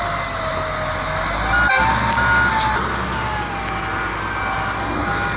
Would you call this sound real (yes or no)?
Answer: yes